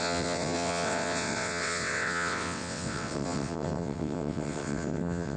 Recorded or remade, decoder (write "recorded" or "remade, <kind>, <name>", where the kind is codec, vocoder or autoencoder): remade, vocoder, WaveNeXt